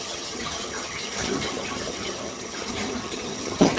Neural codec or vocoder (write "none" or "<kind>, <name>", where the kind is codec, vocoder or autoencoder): vocoder, HiFi-GAN